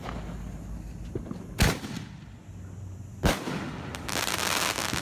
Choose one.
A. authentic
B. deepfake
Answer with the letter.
A